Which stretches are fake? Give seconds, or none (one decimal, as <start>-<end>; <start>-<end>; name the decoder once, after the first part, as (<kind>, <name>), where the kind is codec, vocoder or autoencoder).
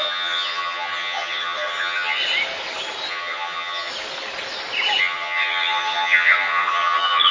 0.0-2.2 (vocoder, HiFi-GAN); 3.1-3.9; 5.0-7.3